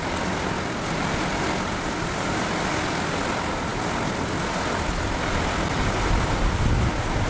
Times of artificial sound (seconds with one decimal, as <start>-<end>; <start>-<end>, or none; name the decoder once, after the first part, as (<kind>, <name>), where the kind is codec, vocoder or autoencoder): none